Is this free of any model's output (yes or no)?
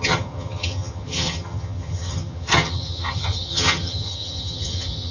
no